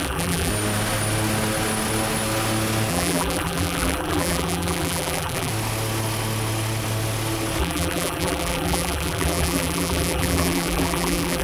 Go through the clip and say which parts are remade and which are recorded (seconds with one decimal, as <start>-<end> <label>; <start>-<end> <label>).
0.0-0.5 remade; 0.5-2.9 recorded; 2.9-5.5 remade; 5.5-7.6 recorded; 7.6-11.4 remade